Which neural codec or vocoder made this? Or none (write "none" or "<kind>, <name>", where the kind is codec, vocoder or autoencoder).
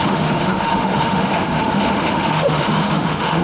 autoencoder, DAC-VAE